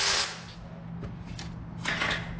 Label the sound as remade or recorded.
recorded